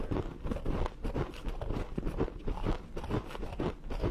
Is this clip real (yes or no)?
yes